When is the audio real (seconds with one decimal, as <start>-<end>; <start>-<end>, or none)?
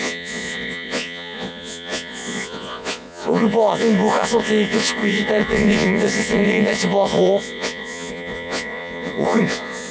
none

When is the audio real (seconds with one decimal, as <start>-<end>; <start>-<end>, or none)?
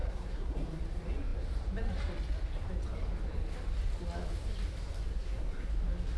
0.8-5.1; 5.7-6.2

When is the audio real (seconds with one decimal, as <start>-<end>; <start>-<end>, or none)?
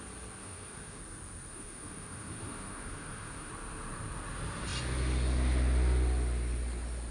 0.0-0.4; 1.0-1.5; 3.5-7.1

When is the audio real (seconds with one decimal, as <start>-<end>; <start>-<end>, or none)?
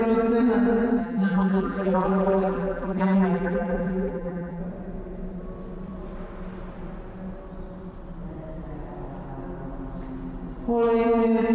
0.0-1.0; 4.6-11.5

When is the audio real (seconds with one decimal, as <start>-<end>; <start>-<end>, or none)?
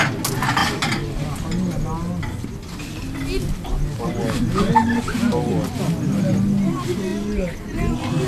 0.0-8.3